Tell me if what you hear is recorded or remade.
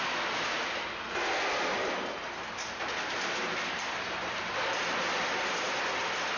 recorded